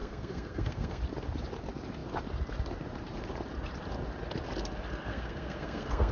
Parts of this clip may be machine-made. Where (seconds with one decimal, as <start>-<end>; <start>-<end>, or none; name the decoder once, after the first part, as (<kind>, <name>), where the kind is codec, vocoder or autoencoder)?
0.0-1.0 (codec, SNAC); 5.1-6.1